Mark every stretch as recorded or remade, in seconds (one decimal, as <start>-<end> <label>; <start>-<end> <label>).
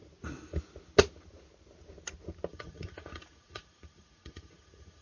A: 0.0-2.5 recorded; 2.5-5.0 remade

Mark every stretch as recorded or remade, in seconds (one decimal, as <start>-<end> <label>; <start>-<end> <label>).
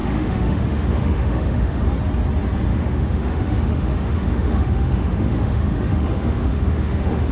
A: 0.0-1.8 remade; 1.8-2.7 recorded; 2.7-7.3 remade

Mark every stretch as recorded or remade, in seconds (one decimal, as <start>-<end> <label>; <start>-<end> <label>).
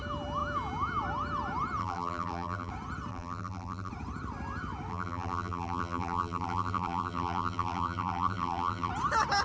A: 0.0-1.8 recorded; 1.8-2.7 remade; 2.7-3.1 recorded; 3.1-3.9 remade; 3.9-4.9 recorded; 4.9-8.9 remade; 8.9-9.4 recorded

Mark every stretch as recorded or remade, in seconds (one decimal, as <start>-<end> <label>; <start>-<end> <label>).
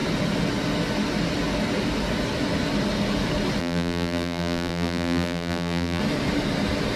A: 0.0-3.6 recorded; 3.6-6.0 remade; 6.0-7.0 recorded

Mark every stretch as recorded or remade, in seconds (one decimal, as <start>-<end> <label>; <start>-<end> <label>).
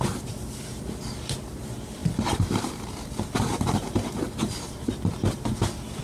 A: 0.0-2.0 recorded; 2.0-4.9 remade; 4.9-6.0 recorded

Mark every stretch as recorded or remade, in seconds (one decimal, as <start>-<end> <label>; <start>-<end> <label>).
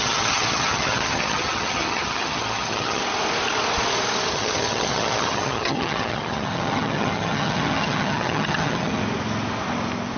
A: 0.0-3.0 remade; 3.0-4.3 recorded; 4.3-9.0 remade; 9.0-10.2 recorded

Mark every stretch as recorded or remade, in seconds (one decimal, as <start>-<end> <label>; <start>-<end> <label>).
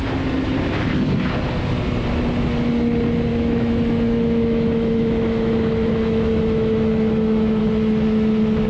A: 0.0-3.3 recorded; 3.3-7.6 remade; 7.6-8.7 recorded